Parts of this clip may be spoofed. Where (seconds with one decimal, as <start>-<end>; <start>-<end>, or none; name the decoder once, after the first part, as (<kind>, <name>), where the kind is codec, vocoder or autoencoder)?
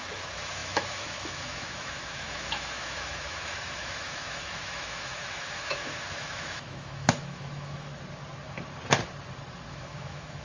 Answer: 0.0-7.9 (autoencoder, DAC-VAE); 9.7-10.4